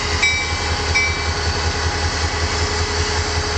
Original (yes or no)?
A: yes